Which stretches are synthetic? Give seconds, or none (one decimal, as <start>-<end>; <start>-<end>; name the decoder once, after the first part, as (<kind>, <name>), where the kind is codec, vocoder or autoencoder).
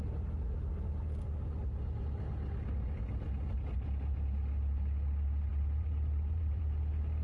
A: 5.5-6.6 (vocoder, BigVGAN v2)